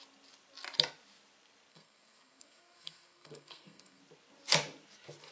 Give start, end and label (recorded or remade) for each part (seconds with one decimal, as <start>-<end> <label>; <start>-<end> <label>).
0.0-1.7 recorded; 1.7-4.0 remade; 4.0-5.3 recorded